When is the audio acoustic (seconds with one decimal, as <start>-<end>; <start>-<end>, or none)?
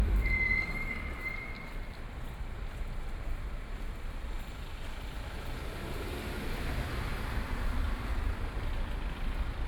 none